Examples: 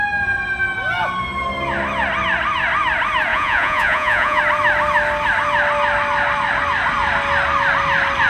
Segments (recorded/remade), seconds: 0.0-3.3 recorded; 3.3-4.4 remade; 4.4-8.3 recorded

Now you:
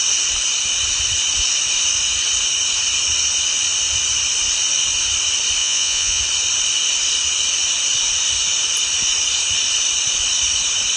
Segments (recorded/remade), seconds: 0.0-5.6 recorded; 5.6-6.2 remade; 6.2-11.0 recorded

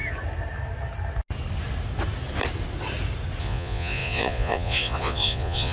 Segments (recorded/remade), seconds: 0.0-3.4 recorded; 3.4-5.7 remade